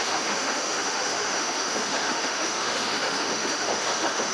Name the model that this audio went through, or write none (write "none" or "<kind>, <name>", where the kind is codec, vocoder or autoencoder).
autoencoder, DAC-VAE